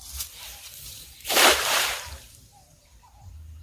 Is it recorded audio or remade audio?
remade